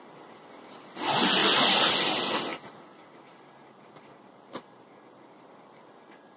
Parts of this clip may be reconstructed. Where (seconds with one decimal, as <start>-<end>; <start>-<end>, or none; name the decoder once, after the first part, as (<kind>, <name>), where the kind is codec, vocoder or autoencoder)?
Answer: none